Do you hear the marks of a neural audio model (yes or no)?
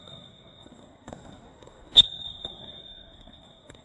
yes